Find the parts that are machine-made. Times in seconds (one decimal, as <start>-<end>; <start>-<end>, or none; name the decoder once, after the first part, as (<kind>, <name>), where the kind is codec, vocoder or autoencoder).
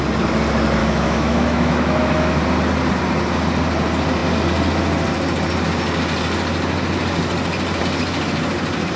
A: 0.8-2.4 (autoencoder, DAC-VAE)